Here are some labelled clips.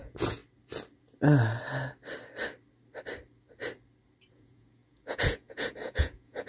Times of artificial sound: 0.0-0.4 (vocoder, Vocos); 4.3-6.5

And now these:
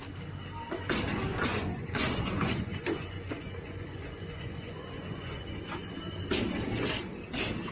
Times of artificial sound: 1.5-6.0 (vocoder, Vocos)

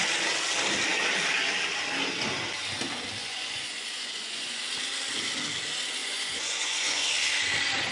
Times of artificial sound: 3.2-4.6 (vocoder, Vocos); 6.0-7.1